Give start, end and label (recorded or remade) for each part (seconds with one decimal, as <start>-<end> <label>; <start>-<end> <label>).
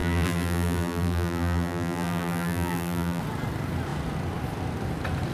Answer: 0.0-3.2 remade; 3.2-5.3 recorded